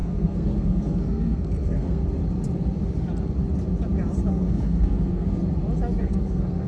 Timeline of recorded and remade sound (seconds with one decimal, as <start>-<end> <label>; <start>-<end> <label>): 0.0-2.0 remade; 2.0-4.3 recorded; 4.3-5.4 remade; 5.4-6.0 recorded; 6.0-6.7 remade